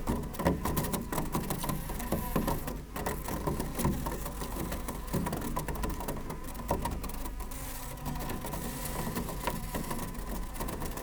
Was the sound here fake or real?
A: real